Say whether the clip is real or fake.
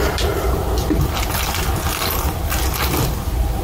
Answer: fake